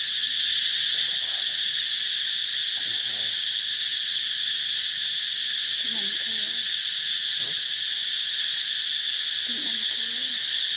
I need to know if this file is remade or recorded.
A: recorded